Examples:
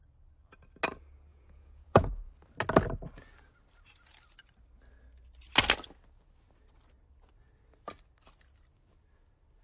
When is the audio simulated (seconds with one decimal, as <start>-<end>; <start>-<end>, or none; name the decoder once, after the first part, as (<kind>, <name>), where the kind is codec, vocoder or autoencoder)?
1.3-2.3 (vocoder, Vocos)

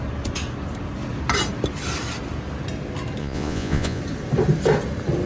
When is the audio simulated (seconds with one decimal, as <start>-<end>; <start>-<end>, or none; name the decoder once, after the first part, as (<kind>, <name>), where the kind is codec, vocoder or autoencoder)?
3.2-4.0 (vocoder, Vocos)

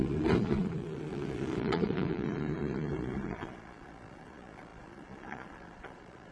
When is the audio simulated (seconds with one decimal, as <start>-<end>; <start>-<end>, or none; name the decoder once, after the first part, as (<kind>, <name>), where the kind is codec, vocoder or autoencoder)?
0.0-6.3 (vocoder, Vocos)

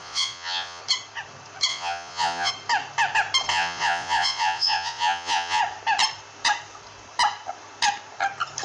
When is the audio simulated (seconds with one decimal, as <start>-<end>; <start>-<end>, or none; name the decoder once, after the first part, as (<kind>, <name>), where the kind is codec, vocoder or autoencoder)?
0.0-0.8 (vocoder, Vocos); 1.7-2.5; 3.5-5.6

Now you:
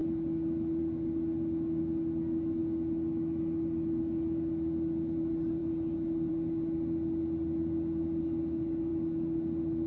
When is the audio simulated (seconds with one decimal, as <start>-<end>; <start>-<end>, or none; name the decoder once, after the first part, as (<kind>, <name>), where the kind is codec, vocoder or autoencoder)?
none

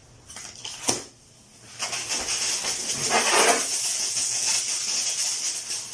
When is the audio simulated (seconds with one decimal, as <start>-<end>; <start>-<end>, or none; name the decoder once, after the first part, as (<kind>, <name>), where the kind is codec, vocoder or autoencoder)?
3.9-4.5 (vocoder, Vocos)